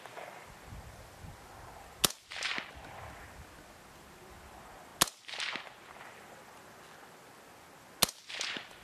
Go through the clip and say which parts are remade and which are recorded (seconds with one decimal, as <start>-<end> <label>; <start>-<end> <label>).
0.0-8.8 recorded